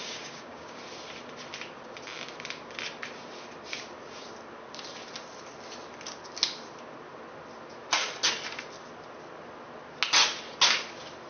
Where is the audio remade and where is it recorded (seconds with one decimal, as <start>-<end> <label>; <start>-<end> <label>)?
0.0-0.8 remade; 0.8-11.3 recorded